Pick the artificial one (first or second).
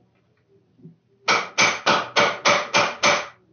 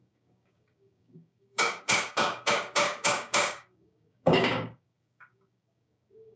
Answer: second